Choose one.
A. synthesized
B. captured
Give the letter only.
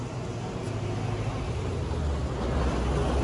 B